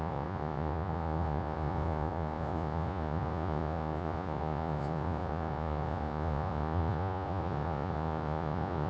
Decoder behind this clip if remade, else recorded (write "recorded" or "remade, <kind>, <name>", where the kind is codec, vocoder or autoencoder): remade, vocoder, Vocos